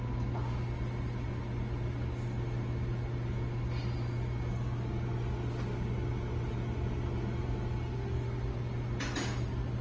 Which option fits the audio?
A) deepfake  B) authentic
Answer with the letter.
B